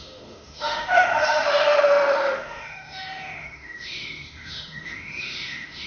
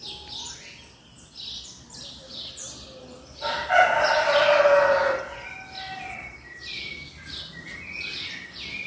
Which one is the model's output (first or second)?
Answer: first